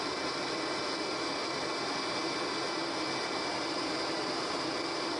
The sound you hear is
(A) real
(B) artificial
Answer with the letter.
A